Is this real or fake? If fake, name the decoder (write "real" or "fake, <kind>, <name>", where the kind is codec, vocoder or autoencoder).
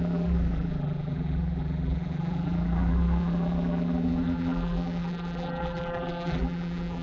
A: fake, vocoder, BigVGAN v2